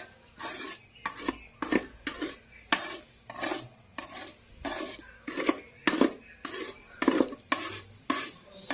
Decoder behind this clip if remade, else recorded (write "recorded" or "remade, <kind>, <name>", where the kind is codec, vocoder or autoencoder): recorded